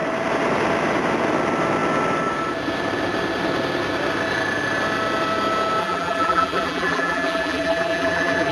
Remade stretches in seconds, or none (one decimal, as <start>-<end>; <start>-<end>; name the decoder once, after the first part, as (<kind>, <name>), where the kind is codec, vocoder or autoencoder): 5.8-8.5 (vocoder, BigVGAN v2)